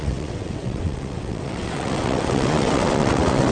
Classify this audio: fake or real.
fake